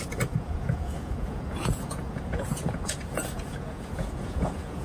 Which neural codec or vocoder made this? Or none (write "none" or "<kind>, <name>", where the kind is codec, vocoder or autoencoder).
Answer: vocoder, Vocos